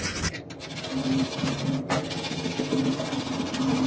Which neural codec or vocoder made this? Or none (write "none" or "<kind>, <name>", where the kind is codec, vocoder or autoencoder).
none